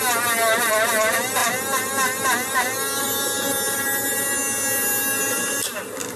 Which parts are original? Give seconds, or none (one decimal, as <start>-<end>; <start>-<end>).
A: 0.0-6.2